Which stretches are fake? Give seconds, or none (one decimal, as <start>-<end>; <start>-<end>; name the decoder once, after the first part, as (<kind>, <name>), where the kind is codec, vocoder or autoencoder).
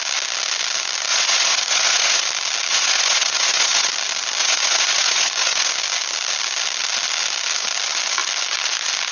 1.1-2.2 (vocoder, Vocos); 2.7-3.9; 4.4-5.7